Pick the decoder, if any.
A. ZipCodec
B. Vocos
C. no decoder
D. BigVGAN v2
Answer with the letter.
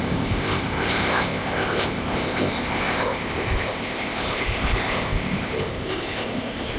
A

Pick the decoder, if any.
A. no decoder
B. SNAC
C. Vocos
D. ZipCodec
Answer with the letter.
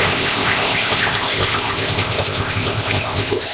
D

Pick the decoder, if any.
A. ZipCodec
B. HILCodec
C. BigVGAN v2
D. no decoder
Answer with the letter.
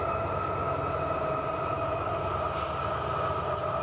D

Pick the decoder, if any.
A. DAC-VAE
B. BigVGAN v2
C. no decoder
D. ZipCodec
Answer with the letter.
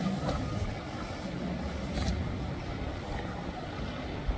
C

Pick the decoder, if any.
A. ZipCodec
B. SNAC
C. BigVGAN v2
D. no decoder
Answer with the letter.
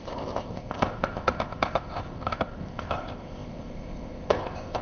A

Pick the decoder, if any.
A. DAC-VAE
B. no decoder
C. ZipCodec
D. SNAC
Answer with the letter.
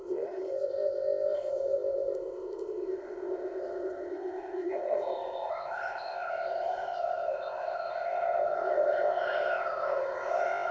C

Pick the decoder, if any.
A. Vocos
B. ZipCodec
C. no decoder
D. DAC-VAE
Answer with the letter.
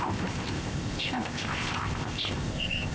B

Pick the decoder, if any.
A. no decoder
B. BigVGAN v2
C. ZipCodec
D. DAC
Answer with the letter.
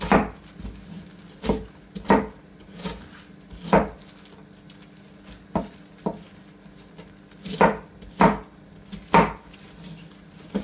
A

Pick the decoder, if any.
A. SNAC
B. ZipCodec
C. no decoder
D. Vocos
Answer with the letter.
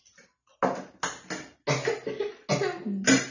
C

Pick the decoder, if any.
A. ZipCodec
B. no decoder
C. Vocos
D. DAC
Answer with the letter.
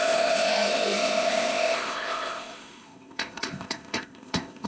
A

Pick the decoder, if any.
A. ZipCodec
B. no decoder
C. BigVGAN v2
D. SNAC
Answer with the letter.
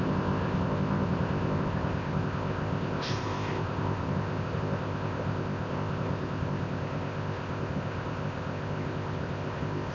A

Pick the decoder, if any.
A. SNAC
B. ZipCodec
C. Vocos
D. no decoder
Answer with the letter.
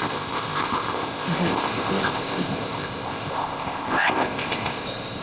B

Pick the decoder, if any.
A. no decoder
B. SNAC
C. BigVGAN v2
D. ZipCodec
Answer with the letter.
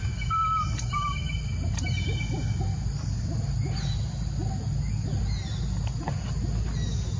A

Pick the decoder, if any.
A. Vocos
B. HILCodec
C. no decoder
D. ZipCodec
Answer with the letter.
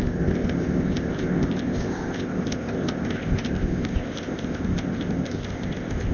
D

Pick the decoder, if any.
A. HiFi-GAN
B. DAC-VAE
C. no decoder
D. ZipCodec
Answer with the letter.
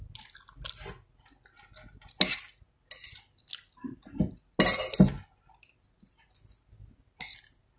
C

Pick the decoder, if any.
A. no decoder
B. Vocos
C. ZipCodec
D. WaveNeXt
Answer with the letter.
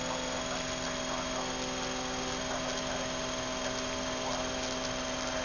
A